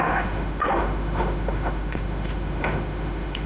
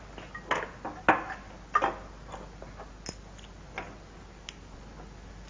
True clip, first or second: second